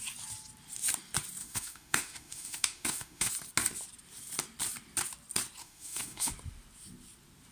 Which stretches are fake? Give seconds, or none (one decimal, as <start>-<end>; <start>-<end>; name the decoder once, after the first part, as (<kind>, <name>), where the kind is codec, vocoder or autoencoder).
1.4-3.3 (autoencoder, DAC-VAE); 5.6-6.3